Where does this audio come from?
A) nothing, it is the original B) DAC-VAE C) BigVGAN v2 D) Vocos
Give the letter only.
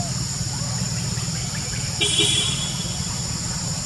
A